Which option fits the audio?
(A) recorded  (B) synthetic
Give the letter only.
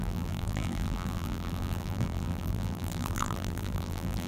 B